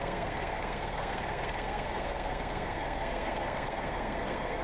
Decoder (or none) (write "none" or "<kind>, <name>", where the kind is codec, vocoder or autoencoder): codec, SNAC